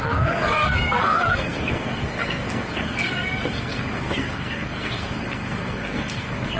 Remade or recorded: remade